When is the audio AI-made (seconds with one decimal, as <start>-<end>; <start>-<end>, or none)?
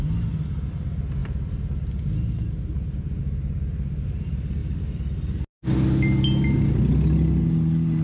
none